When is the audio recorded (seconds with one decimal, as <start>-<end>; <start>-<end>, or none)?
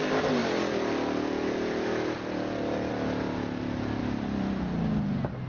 0.0-0.4; 2.9-4.0; 4.7-5.5